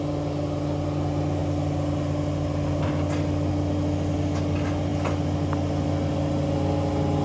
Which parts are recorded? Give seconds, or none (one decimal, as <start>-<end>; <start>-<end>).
0.0-7.2